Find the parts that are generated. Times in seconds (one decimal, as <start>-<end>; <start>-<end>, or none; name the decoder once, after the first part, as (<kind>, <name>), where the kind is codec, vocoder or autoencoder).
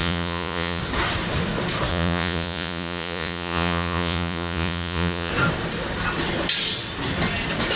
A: 0.0-0.8 (vocoder, Vocos); 1.9-5.3